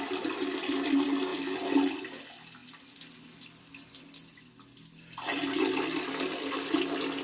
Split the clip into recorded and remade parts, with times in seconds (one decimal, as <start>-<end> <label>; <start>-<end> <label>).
0.0-7.2 recorded